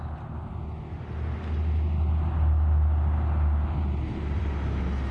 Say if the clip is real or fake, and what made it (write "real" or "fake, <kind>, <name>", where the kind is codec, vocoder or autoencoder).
real